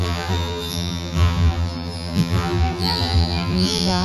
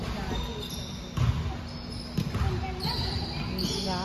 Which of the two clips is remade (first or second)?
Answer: first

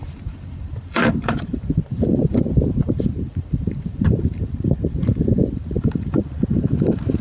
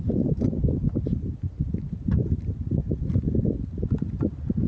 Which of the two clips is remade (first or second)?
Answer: first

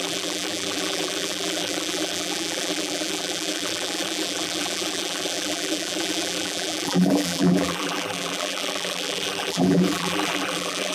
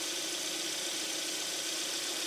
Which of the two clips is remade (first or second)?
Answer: first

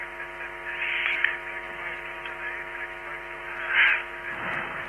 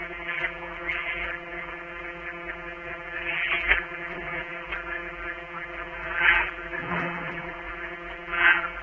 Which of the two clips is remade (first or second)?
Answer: second